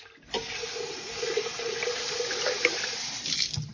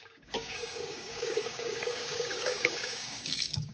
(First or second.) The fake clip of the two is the second